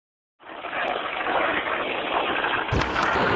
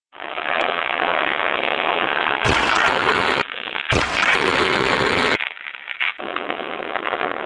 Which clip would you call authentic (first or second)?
first